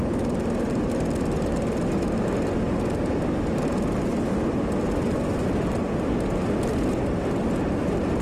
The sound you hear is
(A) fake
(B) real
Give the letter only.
B